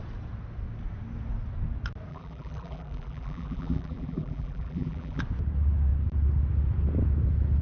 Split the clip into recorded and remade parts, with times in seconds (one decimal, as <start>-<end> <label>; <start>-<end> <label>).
0.0-2.1 recorded; 2.1-5.2 remade; 5.2-7.6 recorded